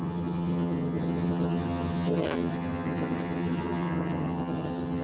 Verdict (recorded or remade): remade